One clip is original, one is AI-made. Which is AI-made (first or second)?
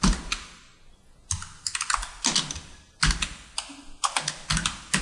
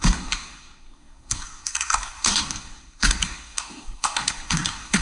second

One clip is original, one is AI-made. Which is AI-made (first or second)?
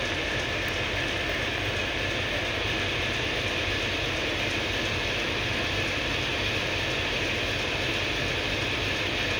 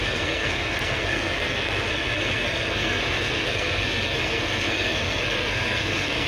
second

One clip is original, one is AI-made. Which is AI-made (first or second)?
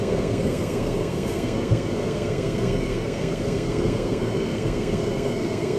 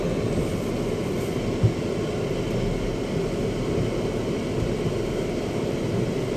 first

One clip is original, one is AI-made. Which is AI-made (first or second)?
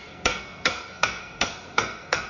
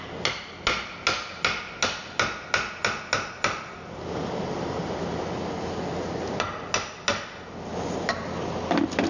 first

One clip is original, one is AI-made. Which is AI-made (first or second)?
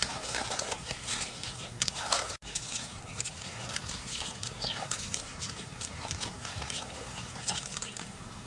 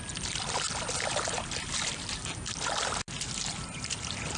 first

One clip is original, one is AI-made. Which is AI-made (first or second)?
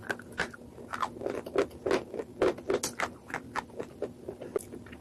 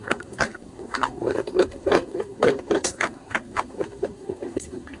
second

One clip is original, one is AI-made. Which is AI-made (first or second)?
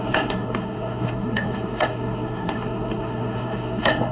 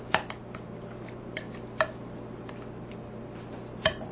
first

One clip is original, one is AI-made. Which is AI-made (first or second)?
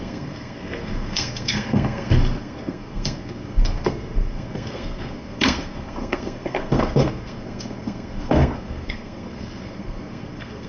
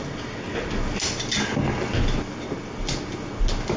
first